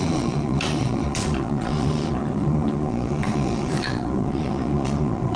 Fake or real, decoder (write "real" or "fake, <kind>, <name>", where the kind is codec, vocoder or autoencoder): fake, vocoder, Vocos